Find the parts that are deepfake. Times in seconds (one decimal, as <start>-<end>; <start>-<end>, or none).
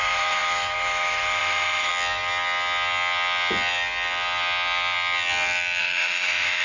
0.0-1.9; 5.8-6.6